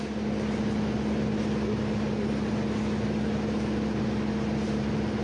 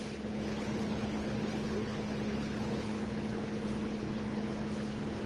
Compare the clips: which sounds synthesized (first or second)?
second